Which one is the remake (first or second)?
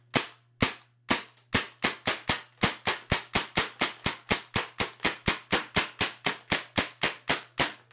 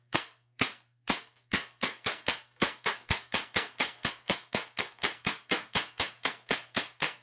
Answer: second